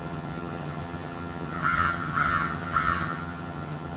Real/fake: fake